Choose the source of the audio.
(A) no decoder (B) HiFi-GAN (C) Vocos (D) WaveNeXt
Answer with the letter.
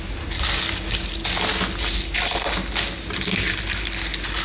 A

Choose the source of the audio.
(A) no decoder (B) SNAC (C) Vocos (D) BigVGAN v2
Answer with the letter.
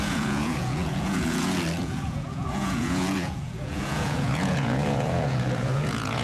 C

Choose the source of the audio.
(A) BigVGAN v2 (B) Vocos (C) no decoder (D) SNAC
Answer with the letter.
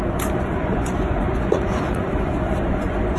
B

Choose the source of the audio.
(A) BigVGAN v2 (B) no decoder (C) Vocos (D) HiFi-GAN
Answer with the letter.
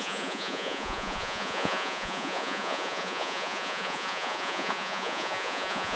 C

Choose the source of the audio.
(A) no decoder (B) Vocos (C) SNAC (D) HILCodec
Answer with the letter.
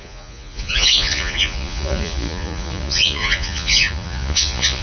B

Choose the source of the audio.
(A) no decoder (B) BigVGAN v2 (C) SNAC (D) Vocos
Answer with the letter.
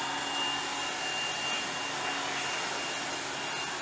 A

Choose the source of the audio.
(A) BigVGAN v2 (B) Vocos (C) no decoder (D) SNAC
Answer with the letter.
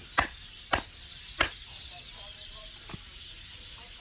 C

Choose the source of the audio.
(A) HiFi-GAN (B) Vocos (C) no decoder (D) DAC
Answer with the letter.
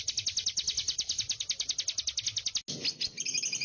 C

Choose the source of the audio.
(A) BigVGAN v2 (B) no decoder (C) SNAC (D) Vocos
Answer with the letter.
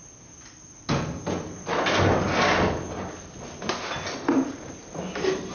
B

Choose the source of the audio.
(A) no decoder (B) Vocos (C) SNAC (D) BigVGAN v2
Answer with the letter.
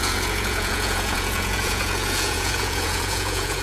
B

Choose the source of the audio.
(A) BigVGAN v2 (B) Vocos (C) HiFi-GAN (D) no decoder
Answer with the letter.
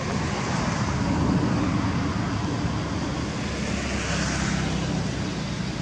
D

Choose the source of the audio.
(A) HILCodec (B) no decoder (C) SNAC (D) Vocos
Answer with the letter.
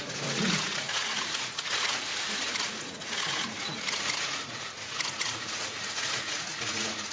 D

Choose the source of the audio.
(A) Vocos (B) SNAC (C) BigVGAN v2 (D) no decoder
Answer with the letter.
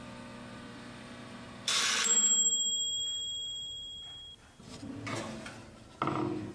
D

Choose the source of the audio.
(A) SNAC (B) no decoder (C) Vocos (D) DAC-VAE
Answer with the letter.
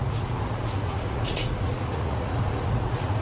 C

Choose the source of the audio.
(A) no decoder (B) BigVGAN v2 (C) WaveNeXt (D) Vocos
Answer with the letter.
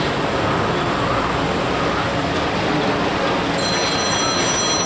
A